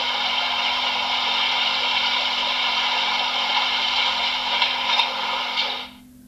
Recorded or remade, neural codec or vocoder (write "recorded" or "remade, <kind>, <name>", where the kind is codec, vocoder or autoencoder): recorded